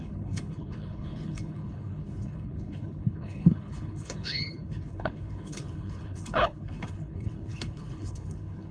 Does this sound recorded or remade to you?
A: remade